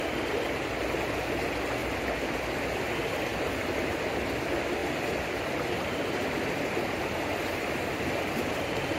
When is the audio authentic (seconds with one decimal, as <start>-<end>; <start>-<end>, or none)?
0.0-9.0